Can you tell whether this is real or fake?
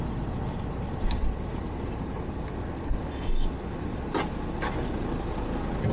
real